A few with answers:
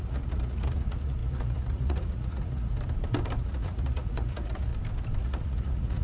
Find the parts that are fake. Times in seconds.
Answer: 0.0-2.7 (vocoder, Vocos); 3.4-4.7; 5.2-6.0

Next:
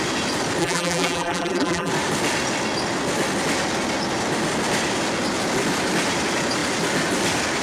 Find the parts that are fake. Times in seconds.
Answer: 0.6-1.9 (vocoder, BigVGAN v2)

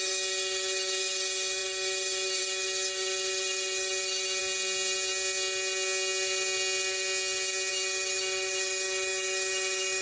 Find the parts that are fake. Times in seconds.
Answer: 0.0-4.4 (autoencoder, DAC-VAE); 7.7-10.0

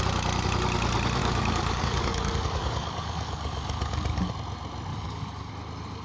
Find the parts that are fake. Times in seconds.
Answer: 1.2-4.3 (codec, DAC); 4.9-5.5

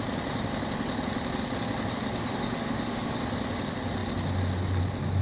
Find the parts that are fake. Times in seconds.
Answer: 2.2-3.2 (autoencoder, DAC-VAE)

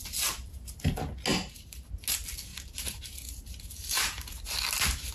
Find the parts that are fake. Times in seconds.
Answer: 1.3-1.9 (vocoder, BigVGAN v2); 2.5-4.3